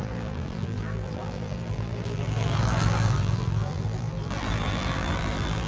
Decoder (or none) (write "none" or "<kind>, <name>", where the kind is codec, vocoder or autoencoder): vocoder, BigVGAN v2